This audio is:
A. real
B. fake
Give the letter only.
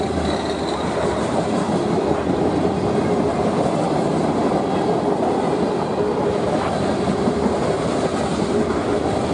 A